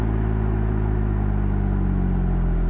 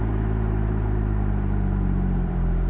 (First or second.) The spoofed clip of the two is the second